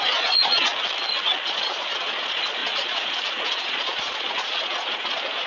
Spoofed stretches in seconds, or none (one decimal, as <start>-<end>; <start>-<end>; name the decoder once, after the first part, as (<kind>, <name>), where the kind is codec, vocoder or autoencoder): 0.0-0.7 (vocoder, Vocos); 1.4-5.5